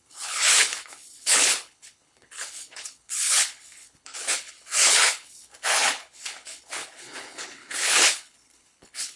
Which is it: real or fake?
fake